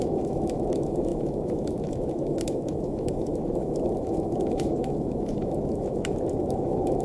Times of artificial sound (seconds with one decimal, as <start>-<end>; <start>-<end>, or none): 0.0-7.0